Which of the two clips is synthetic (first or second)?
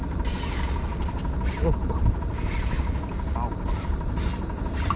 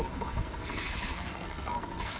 second